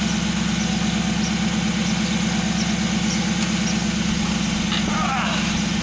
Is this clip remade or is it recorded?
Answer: recorded